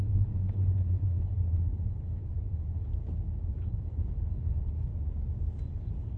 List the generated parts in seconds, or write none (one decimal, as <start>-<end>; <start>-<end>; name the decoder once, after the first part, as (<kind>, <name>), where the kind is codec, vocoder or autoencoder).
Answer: 0.0-2.9 (codec, HILCodec); 3.5-4.9; 5.7-6.2